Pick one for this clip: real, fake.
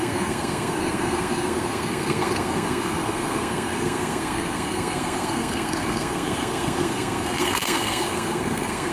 fake